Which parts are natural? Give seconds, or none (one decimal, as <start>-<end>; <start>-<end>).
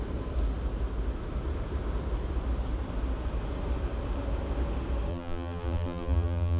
0.0-5.1